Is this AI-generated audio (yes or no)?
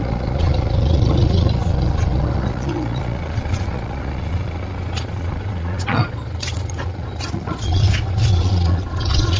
yes